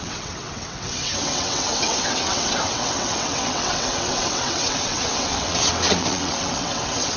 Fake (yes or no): yes